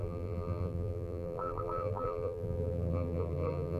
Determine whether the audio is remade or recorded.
remade